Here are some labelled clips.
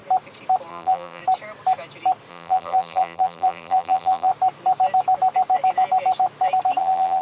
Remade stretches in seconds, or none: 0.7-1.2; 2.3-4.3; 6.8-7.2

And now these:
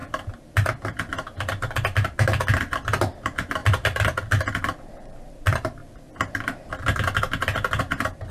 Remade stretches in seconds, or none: 3.2-3.6; 4.6-5.8; 7.8-8.3

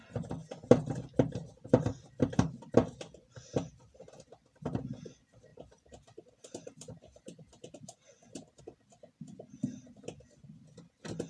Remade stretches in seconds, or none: 5.5-8.6

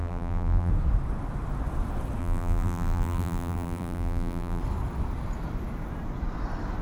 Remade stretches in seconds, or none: 0.0-0.7; 2.2-4.6

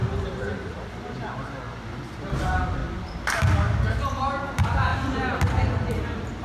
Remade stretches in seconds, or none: 1.7-2.8; 4.5-4.9; 5.7-6.4

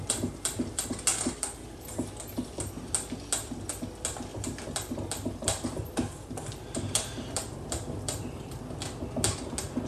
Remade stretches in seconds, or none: 1.1-2.7; 4.3-8.6

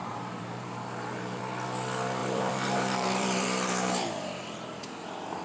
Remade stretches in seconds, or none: 0.0-1.4; 2.2-4.4